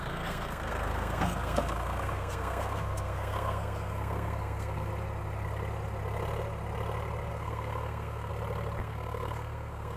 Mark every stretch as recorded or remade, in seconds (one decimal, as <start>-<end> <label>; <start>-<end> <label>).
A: 0.0-4.9 remade; 4.9-7.3 recorded; 7.3-8.3 remade; 8.3-8.8 recorded; 8.8-10.0 remade